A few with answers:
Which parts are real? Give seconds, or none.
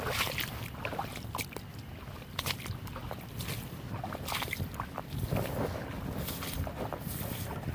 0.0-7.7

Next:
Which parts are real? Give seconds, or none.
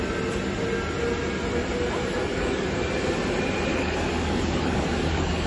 0.0-2.2; 2.8-3.7